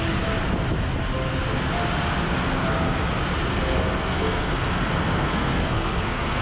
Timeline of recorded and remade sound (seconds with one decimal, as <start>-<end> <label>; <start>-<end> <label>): 0.0-3.5 recorded; 3.5-6.4 remade

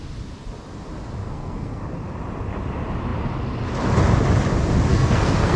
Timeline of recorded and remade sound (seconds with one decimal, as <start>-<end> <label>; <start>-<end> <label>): 0.0-1.2 recorded; 1.2-1.8 remade; 1.8-4.9 recorded; 4.9-5.6 remade

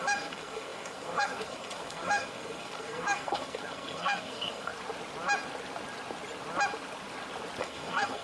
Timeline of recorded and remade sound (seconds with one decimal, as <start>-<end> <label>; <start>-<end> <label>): 0.0-4.7 remade; 4.7-7.6 recorded; 7.6-8.2 remade

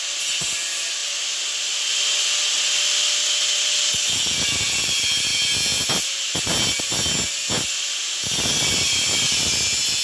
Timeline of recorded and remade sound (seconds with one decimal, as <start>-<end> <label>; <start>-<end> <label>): 0.0-10.0 recorded